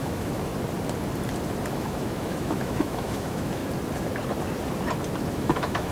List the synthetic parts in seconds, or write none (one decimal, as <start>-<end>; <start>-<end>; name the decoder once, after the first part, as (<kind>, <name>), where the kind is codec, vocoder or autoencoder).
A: 0.0-0.5 (autoencoder, DAC-VAE); 1.7-3.6; 5.3-5.9